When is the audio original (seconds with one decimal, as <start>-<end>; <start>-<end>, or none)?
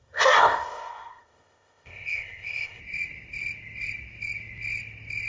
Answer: 2.8-5.3